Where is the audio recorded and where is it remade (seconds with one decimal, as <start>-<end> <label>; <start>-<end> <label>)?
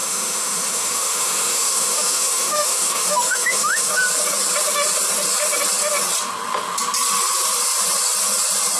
0.0-3.9 remade; 3.9-8.8 recorded